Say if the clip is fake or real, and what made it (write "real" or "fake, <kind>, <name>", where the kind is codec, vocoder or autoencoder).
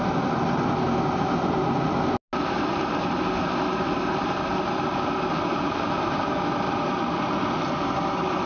real